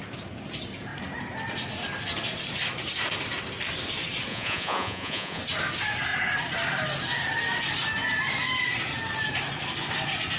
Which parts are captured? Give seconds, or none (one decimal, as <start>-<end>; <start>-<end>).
0.0-4.3; 5.4-10.4